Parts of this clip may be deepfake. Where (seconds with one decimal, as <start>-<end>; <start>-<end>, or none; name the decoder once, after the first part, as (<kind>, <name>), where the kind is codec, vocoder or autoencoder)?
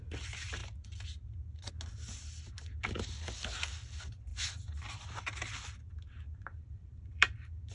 6.5-7.7 (vocoder, BigVGAN v2)